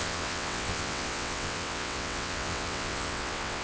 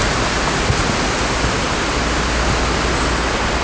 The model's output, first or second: first